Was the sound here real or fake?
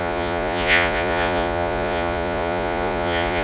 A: fake